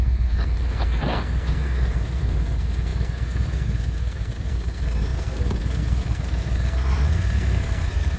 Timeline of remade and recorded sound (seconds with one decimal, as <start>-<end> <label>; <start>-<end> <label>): 0.0-8.2 remade

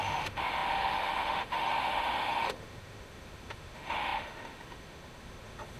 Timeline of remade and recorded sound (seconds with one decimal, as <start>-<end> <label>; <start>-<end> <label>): 0.0-5.8 remade